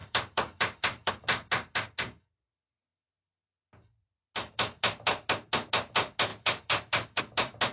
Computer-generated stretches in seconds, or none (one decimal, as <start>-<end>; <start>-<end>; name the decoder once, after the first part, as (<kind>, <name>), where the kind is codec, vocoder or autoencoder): 0.0-1.1 (vocoder, BigVGAN v2); 6.3-7.2